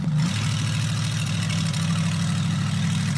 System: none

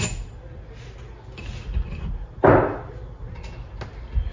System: none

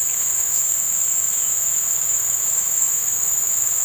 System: autoencoder, DAC-VAE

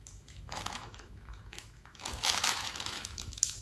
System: autoencoder, DAC-VAE